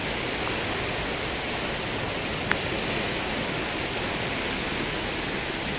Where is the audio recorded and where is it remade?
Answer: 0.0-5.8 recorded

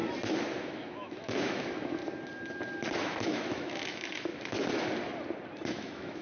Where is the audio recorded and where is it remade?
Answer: 0.0-0.6 recorded; 0.6-2.0 remade; 2.0-3.0 recorded; 3.0-4.3 remade; 4.3-5.7 recorded; 5.7-6.2 remade

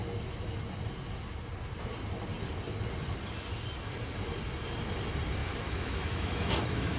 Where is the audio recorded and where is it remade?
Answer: 0.0-5.4 recorded; 5.4-6.5 remade; 6.5-7.0 recorded

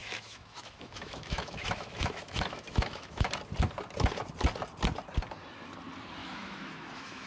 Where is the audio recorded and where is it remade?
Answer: 0.0-3.3 remade; 3.3-6.2 recorded; 6.2-7.3 remade

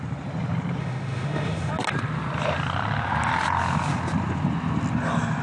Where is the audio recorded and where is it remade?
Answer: 0.0-0.8 recorded; 0.8-1.7 remade; 1.7-5.4 recorded

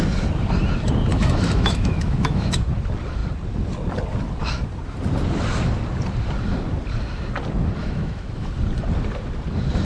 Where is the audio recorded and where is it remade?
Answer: 0.0-1.1 recorded; 1.1-2.6 remade; 2.6-7.8 recorded; 7.8-8.5 remade; 8.5-9.8 recorded

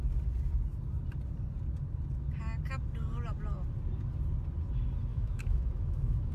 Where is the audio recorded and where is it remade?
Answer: 0.0-5.1 recorded; 5.1-6.3 remade

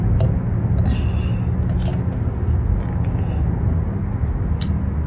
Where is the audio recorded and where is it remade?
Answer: 0.0-5.1 recorded